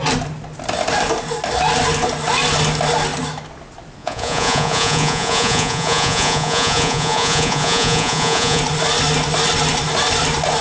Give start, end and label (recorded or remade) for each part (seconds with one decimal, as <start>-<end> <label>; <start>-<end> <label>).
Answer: 0.0-4.0 recorded; 4.0-8.6 remade; 8.6-10.6 recorded